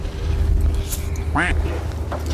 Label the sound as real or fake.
real